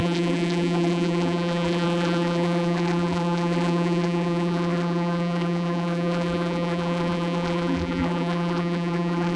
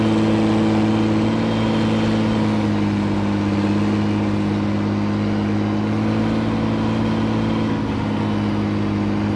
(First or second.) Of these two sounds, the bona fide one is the second